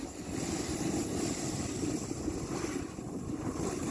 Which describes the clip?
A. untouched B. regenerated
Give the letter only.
A